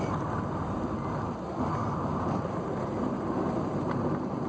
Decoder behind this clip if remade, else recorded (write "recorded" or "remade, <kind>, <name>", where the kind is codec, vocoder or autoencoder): recorded